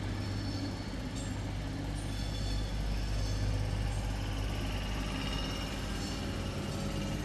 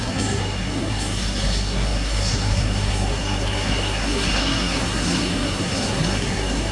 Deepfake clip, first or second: second